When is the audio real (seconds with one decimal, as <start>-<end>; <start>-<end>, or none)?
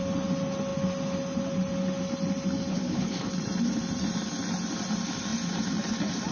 0.0-2.7; 3.3-6.3